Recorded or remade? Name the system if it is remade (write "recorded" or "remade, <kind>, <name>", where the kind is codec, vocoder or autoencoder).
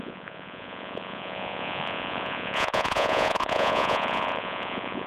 remade, vocoder, Vocos